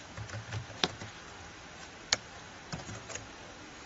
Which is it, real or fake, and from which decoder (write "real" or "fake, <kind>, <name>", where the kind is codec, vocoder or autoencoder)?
fake, vocoder, BigVGAN v2